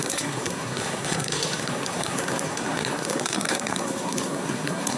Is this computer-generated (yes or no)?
yes